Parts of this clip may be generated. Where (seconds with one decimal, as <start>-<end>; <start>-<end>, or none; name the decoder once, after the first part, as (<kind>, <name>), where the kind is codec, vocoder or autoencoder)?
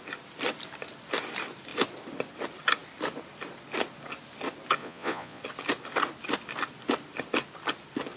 4.8-5.4 (vocoder, Vocos)